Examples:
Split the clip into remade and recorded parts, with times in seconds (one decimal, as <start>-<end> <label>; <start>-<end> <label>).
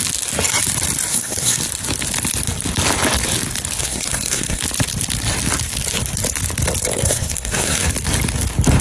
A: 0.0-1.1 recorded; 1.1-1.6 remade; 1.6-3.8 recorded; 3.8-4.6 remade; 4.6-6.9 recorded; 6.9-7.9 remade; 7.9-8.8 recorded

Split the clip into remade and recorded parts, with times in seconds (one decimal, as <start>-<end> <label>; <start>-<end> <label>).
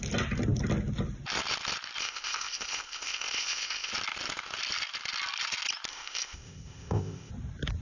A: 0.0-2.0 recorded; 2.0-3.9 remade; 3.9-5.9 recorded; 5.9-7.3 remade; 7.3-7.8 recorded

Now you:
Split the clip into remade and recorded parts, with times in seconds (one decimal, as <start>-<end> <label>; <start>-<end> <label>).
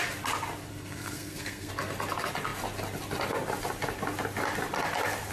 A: 0.0-0.7 recorded; 0.7-1.7 remade; 1.7-5.3 recorded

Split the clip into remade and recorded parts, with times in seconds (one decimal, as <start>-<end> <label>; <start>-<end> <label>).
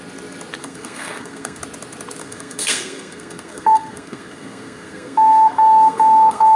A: 0.0-0.6 recorded; 0.6-1.6 remade; 1.6-2.2 recorded; 2.2-6.6 remade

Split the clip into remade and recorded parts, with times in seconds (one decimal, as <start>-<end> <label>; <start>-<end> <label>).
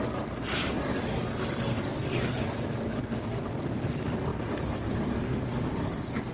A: 0.0-6.3 recorded